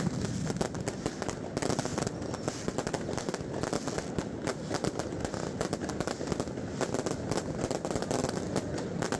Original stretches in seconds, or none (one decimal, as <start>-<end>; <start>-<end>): 0.0-9.2